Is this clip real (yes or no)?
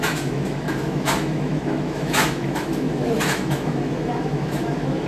no